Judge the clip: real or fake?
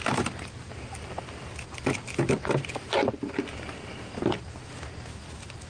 real